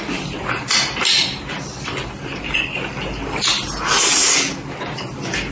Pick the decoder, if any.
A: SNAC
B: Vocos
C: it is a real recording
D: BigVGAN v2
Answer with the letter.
C